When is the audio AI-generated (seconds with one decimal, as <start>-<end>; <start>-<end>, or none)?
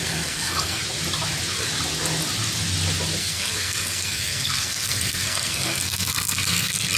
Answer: 0.0-0.8; 3.2-7.0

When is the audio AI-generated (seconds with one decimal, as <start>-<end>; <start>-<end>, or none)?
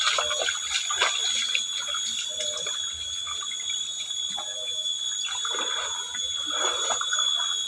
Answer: none